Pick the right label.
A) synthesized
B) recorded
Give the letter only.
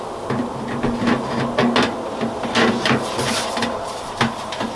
B